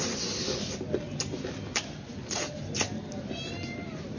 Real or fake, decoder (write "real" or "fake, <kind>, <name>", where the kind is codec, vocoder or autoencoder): real